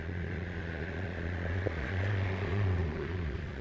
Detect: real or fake fake